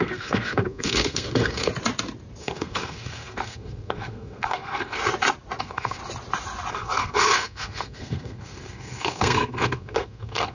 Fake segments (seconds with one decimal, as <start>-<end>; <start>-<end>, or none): 0.0-1.7; 2.4-5.0; 5.6-6.0; 6.7-10.5